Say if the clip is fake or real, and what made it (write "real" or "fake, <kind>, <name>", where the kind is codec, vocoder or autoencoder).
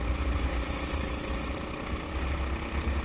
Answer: real